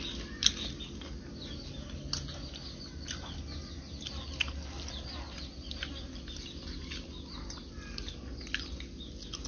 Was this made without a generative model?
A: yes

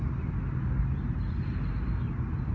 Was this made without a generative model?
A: yes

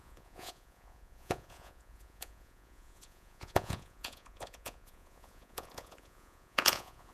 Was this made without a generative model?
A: no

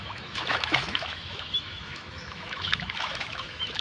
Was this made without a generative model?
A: no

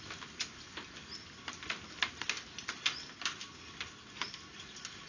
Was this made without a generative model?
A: yes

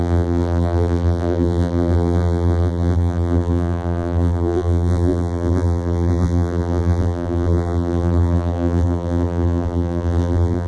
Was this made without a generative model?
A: no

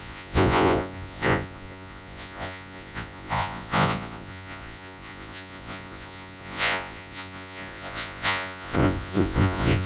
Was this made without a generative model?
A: no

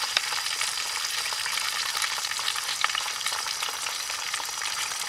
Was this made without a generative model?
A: no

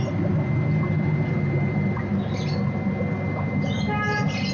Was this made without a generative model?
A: yes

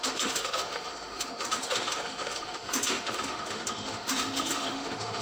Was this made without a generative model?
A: no